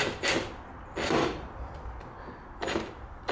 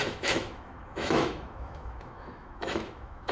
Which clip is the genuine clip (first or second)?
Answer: first